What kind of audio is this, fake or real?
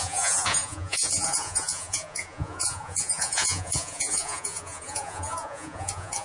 fake